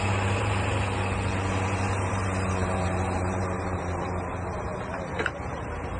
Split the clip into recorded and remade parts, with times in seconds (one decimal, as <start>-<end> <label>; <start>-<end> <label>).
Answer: 0.0-6.0 remade

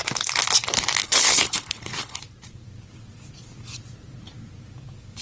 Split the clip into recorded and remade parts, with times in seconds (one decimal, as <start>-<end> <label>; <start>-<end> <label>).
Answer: 0.0-1.0 recorded; 1.0-2.2 remade; 2.2-5.2 recorded